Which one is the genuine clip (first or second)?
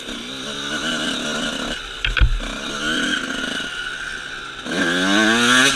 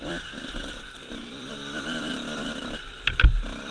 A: first